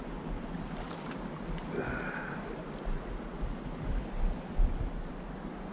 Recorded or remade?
recorded